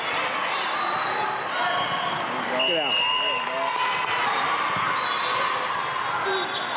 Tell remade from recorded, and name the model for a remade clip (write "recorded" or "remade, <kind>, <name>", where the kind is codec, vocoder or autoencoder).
recorded